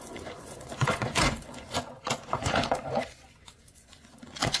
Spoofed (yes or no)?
yes